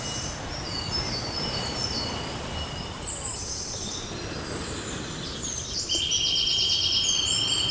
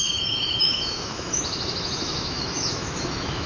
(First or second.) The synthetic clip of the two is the second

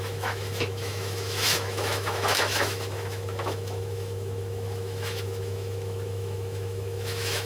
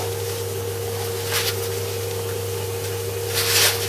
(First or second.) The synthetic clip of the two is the first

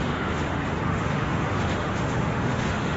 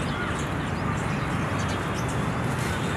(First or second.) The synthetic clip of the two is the first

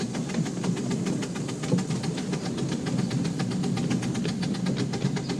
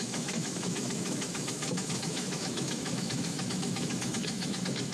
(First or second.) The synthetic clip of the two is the second